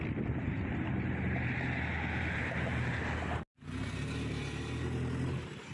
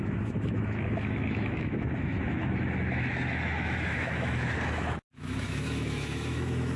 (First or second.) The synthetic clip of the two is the second